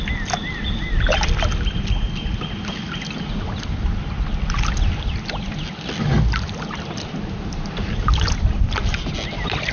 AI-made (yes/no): no